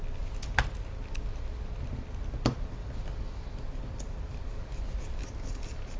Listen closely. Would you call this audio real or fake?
real